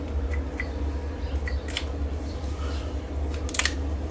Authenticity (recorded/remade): recorded